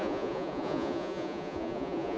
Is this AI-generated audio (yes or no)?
yes